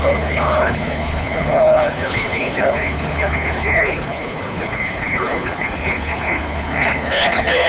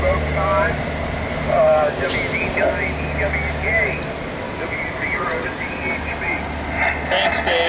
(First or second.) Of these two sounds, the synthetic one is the first